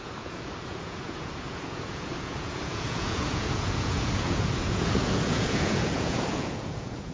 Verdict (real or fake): fake